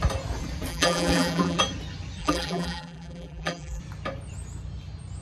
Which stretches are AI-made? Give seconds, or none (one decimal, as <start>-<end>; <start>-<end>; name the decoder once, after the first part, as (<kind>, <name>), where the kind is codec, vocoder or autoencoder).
0.7-1.6 (vocoder, BigVGAN v2); 2.2-3.8